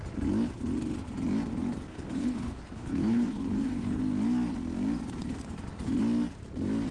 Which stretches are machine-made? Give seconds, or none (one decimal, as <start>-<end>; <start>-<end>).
1.9-4.0